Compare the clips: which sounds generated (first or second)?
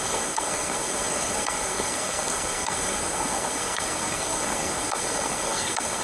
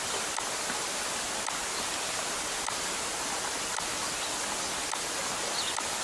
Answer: first